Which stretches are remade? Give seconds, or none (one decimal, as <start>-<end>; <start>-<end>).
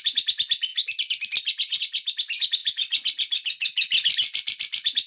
none